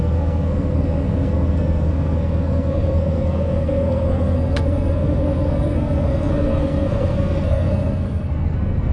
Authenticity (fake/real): fake